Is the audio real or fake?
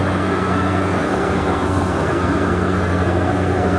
fake